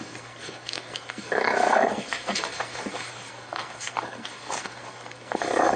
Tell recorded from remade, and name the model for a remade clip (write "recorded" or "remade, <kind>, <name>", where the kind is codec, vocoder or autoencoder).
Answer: remade, codec, SNAC